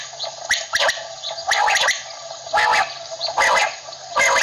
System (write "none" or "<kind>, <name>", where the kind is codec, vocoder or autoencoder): none